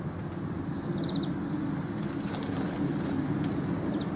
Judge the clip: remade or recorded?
recorded